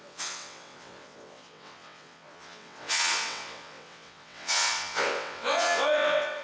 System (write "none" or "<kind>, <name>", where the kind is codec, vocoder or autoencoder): vocoder, WaveNeXt